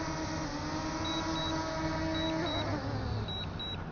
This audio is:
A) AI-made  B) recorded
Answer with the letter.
B